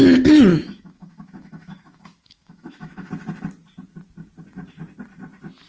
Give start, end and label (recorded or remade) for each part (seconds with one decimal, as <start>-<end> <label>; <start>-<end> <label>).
0.0-0.5 recorded; 0.5-3.1 remade; 3.1-5.7 recorded